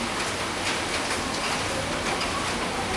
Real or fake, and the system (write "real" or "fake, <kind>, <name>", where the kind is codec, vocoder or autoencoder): real